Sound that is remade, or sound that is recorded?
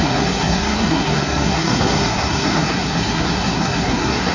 remade